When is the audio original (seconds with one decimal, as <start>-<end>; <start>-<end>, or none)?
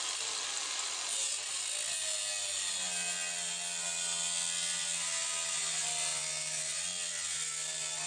0.0-8.1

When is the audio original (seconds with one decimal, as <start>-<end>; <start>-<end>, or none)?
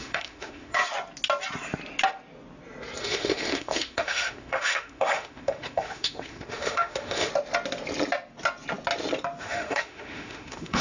0.8-3.0; 7.3-9.4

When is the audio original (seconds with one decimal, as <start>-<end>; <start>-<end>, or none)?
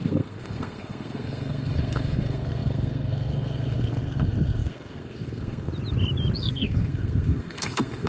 5.7-6.4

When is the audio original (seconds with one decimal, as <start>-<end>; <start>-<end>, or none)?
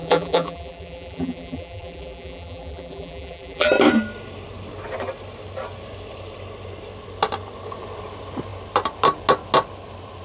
3.7-10.2